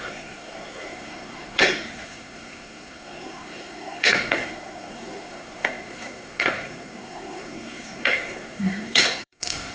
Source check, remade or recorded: remade